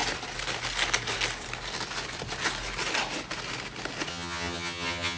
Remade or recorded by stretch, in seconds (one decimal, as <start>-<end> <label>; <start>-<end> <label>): 0.0-4.1 recorded; 4.1-5.2 remade